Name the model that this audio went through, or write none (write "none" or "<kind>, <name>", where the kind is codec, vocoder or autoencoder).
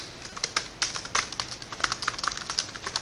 none